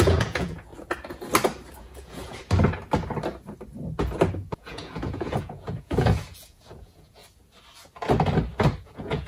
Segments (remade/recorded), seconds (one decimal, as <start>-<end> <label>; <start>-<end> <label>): 0.0-0.7 remade; 0.7-1.7 recorded; 1.7-2.4 remade; 2.4-4.3 recorded; 4.3-7.2 remade; 7.2-8.8 recorded; 8.8-9.3 remade